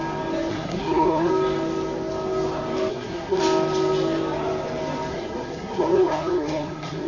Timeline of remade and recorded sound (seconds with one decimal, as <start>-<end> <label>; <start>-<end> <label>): 0.0-0.5 recorded; 0.5-1.3 remade; 1.3-2.9 recorded; 2.9-3.4 remade; 3.4-5.1 recorded; 5.1-7.1 remade